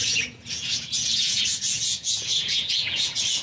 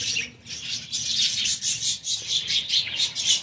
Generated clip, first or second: first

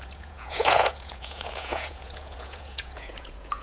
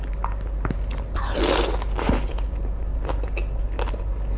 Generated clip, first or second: first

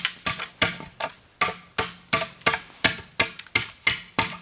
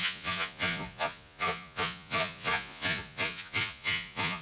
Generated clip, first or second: second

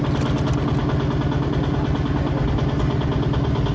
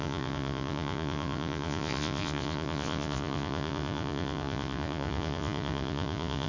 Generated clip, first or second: second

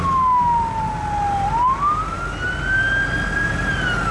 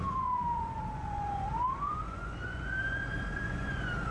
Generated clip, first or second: second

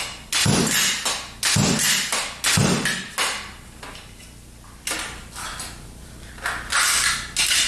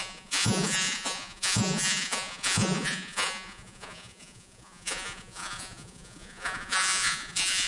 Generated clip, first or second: second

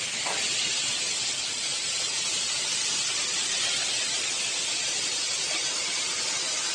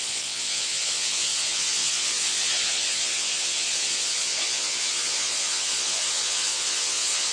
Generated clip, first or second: second